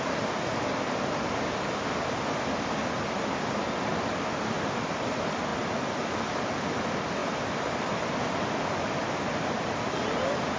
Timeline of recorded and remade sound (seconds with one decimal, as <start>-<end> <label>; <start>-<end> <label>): 0.0-5.5 recorded; 5.5-6.4 remade; 6.4-7.2 recorded; 7.2-9.7 remade; 9.7-10.6 recorded